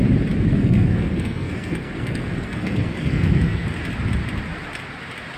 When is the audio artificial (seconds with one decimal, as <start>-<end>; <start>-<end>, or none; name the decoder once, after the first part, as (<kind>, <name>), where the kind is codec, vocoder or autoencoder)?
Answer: 0.5-3.7 (codec, SNAC)